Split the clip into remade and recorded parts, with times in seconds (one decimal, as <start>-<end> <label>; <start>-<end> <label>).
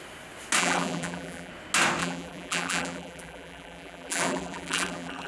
0.0-0.6 recorded; 0.6-1.5 remade; 1.5-2.0 recorded; 2.0-5.3 remade